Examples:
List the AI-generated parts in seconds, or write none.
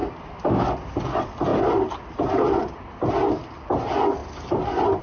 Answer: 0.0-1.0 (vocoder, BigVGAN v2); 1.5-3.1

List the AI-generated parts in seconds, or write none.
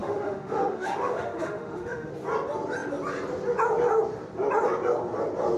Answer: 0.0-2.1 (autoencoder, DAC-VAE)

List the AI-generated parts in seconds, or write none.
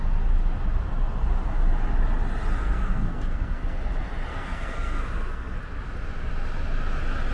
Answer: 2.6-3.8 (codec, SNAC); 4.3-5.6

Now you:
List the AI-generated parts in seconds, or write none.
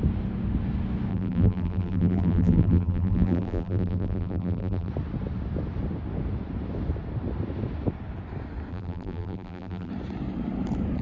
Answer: 1.1-4.9 (vocoder, BigVGAN v2); 8.7-9.9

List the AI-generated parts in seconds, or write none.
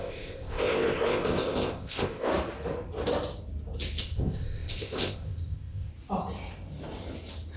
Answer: 0.0-2.3 (codec, ZipCodec); 4.0-5.9